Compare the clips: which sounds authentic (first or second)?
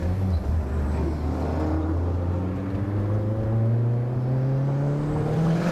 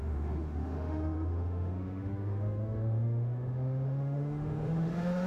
first